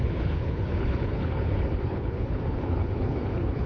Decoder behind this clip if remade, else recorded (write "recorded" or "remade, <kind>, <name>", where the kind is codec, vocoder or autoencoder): remade, codec, HILCodec